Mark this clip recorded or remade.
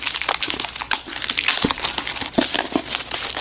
recorded